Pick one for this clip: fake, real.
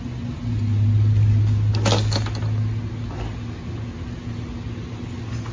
real